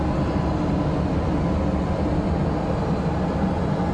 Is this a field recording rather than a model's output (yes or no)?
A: yes